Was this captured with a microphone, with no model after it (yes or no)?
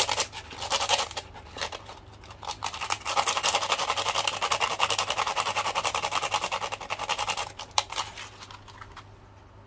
yes